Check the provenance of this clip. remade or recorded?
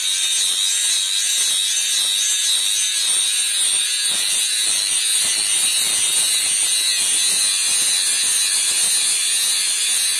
recorded